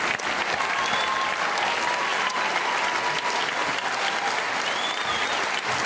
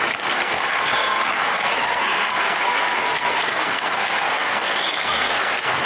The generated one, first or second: second